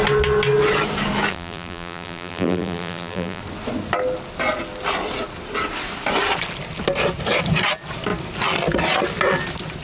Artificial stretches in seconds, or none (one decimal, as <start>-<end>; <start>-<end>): 1.3-3.4